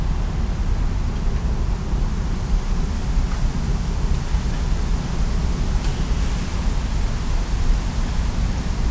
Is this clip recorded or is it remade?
recorded